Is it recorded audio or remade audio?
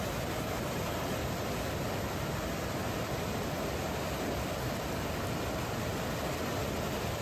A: recorded